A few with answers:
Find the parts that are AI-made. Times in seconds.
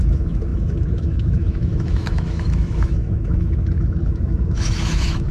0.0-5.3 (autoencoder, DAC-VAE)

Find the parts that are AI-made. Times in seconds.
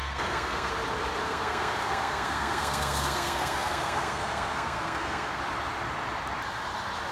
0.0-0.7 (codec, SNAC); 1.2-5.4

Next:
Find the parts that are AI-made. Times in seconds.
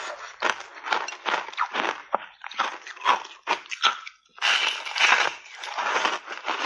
2.0-2.6 (vocoder, BigVGAN v2)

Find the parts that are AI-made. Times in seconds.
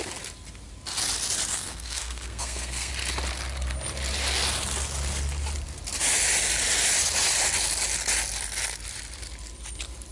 1.5-2.9 (codec, SNAC)